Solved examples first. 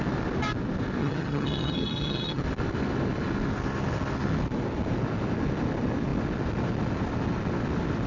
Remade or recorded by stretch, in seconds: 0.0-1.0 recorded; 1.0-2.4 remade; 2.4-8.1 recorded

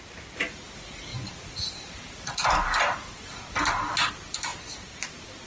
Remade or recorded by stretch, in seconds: 0.0-5.5 recorded